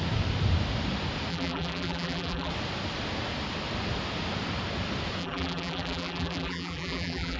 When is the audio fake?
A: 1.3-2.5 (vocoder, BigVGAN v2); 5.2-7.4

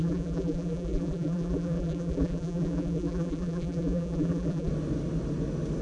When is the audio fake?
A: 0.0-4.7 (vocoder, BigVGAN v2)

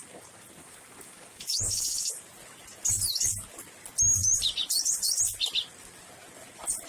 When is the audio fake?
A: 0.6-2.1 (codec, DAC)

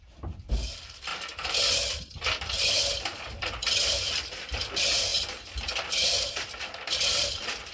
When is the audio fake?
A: 0.0-1.1 (vocoder, BigVGAN v2); 2.1-3.1; 3.8-7.7

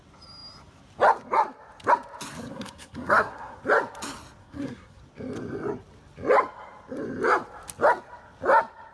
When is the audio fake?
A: 2.5-3.6 (codec, SNAC); 4.4-5.0